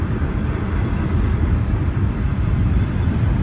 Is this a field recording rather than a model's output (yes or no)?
no